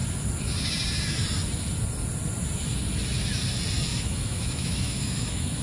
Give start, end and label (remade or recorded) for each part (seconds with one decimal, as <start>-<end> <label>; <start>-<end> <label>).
0.0-3.9 recorded; 3.9-5.6 remade